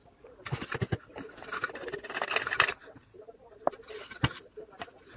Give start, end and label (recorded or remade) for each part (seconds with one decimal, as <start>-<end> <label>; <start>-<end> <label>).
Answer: 0.0-5.2 recorded